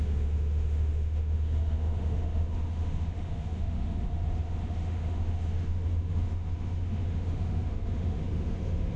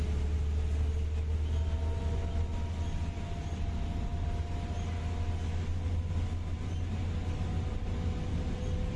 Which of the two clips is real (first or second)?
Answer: second